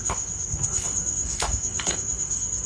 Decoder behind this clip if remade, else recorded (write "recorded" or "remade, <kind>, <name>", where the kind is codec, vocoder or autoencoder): remade, codec, SNAC